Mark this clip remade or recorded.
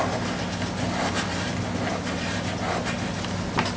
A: recorded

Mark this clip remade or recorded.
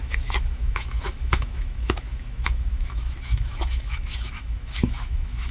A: remade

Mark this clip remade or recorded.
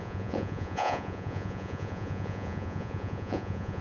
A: remade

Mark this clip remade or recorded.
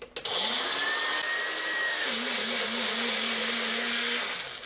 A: recorded